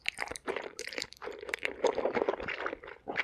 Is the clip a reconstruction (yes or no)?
yes